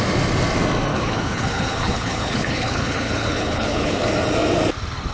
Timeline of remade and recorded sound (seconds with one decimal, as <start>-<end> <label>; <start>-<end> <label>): 0.0-0.9 recorded; 0.9-4.0 remade; 4.0-5.1 recorded